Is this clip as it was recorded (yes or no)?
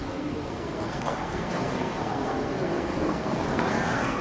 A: no